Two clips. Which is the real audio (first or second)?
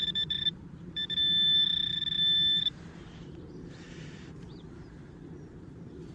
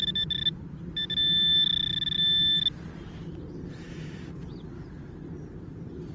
second